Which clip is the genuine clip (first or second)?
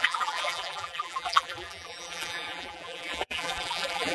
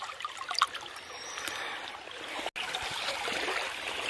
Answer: second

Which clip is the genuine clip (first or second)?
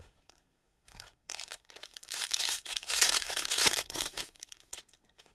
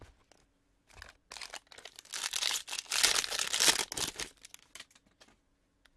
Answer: second